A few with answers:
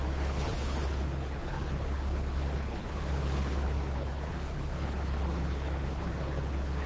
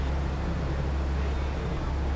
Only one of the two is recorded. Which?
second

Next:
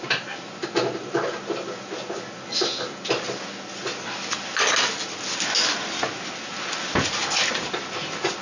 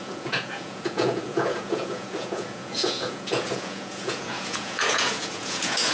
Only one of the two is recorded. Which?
first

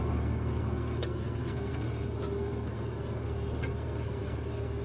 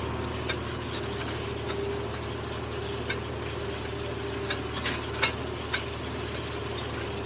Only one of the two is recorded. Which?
second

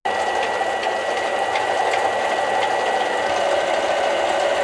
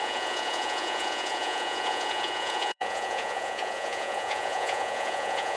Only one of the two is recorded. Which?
first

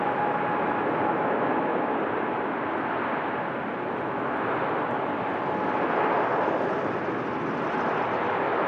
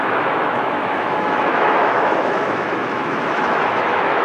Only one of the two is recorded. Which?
first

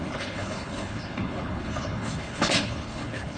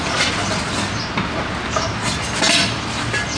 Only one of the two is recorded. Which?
second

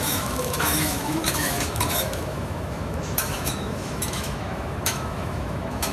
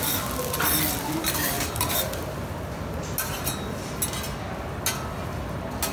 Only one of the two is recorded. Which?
second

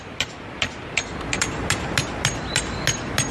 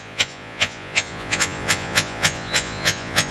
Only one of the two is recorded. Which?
first